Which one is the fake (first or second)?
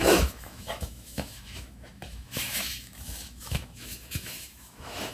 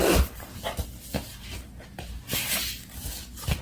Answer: first